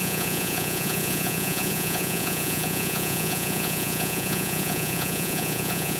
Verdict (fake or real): fake